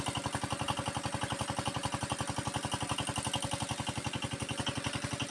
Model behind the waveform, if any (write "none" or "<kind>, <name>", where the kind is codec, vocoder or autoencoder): none